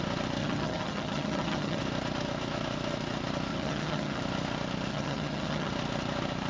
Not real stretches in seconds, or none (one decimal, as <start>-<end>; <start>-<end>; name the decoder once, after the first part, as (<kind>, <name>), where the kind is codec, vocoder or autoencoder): 0.4-1.8 (vocoder, HiFi-GAN); 3.5-4.2; 4.9-5.7